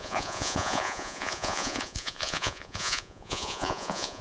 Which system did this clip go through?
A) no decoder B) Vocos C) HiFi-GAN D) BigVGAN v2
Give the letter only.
B